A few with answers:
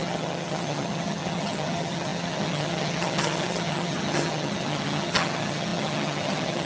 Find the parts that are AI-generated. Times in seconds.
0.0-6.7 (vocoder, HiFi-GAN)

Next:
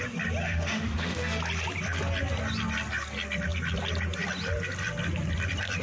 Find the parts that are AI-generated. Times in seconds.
0.4-1.4 (autoencoder, DAC-VAE)

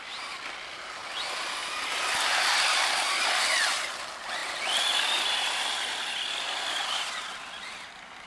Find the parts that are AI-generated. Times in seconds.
none